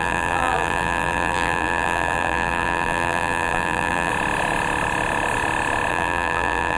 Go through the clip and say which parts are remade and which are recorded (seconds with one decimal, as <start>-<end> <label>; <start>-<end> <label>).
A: 0.0-4.1 remade; 4.1-5.9 recorded; 5.9-6.8 remade